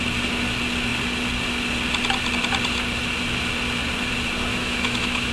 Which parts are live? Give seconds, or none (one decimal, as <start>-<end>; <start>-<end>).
0.0-4.5